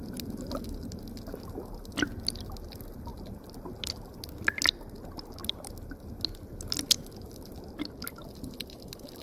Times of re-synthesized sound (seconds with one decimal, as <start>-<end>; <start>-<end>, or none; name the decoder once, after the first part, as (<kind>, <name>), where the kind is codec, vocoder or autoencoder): none

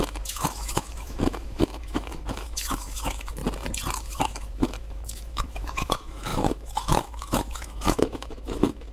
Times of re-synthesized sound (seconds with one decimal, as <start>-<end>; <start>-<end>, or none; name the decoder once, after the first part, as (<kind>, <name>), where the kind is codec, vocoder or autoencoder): 0.0-3.4 (autoencoder, DAC-VAE); 4.0-8.9

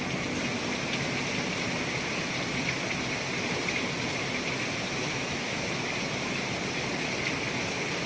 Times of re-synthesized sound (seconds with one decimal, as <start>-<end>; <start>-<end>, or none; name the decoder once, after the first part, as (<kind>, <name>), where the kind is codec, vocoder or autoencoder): 5.0-5.9 (autoencoder, DAC-VAE)

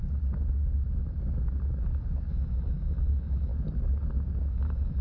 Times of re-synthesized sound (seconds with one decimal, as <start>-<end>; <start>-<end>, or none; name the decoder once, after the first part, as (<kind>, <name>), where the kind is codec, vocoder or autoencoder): 2.3-3.5 (autoencoder, DAC-VAE); 4.5-5.0

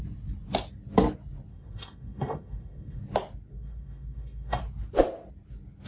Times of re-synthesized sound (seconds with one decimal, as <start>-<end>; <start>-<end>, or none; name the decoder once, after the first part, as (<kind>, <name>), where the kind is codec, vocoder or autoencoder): 1.5-3.0 (autoencoder, DAC-VAE); 3.5-4.6

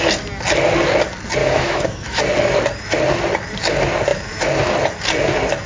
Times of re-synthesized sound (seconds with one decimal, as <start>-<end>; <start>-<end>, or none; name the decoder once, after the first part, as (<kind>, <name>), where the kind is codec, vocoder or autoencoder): 1.4-2.2 (autoencoder, DAC-VAE)

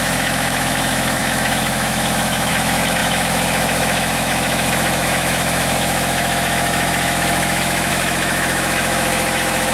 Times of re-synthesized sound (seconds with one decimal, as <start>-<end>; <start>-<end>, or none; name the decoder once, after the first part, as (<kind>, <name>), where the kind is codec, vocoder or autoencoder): 0.0-9.7 (autoencoder, DAC-VAE)